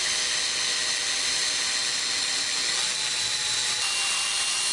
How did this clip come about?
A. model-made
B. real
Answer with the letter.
B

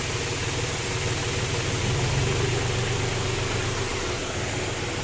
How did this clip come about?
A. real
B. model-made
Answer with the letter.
A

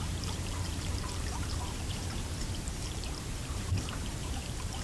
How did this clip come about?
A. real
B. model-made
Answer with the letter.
B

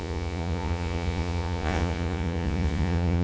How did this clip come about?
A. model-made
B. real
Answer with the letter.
A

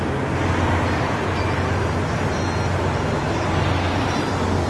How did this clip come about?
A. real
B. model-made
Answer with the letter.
A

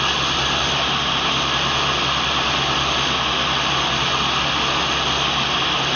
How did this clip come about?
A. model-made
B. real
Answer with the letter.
B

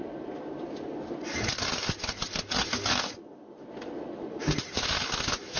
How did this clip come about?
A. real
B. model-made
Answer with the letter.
A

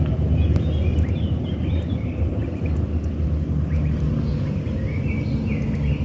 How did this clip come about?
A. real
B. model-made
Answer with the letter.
A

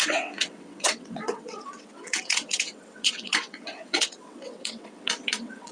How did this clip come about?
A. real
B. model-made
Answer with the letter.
B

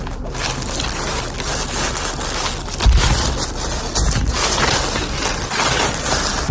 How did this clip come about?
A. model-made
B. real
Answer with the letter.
B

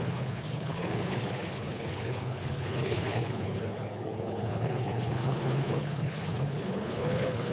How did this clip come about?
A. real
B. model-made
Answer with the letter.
B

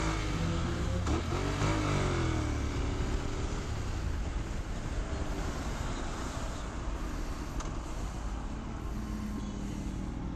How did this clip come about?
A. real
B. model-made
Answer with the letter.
A